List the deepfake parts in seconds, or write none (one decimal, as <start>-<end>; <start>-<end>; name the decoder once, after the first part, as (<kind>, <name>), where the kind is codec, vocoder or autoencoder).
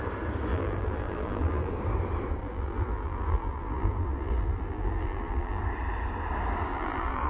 0.5-1.7 (vocoder, BigVGAN v2); 2.4-5.6; 6.7-7.3